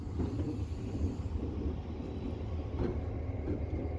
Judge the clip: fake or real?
real